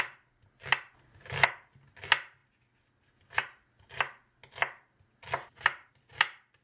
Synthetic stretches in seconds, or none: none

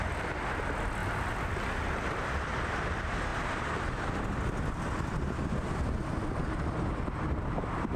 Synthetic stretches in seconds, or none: 1.0-2.2

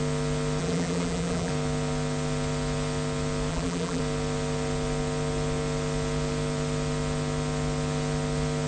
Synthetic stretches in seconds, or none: 0.6-1.5; 3.5-4.0